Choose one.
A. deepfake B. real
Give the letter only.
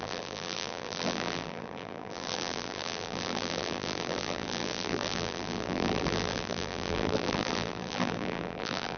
A